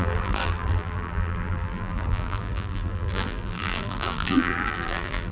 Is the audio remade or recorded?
remade